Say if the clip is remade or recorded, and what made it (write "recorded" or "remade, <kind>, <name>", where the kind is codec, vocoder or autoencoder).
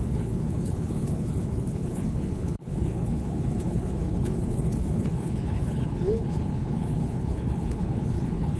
remade, codec, HILCodec